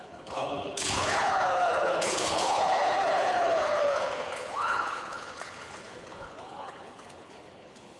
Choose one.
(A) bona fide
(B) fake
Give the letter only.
B